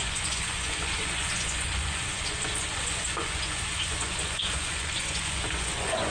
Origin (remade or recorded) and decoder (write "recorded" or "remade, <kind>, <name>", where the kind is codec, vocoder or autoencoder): remade, vocoder, Vocos